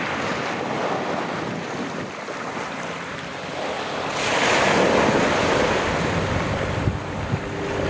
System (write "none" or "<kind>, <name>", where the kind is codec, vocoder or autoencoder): none